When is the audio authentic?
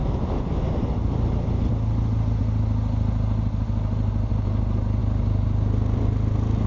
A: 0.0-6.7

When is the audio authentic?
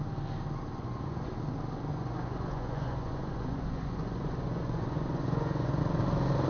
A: 0.0-0.8; 1.3-1.9; 5.8-6.5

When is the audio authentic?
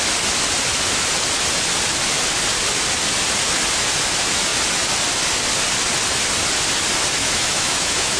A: 0.0-7.2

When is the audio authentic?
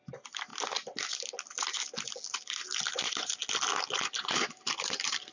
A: 0.5-2.9; 3.4-4.2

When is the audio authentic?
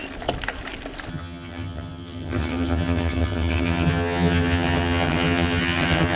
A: 0.0-1.1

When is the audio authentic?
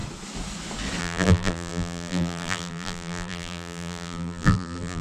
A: 0.0-1.0